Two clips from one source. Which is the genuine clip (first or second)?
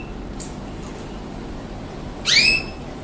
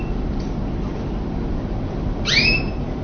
first